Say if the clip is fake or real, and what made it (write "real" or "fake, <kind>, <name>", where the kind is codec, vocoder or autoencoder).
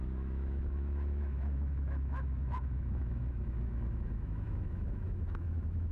fake, autoencoder, DAC-VAE